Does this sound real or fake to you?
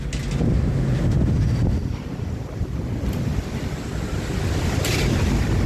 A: real